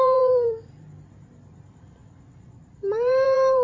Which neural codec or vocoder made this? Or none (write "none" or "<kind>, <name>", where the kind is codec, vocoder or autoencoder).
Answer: vocoder, BigVGAN v2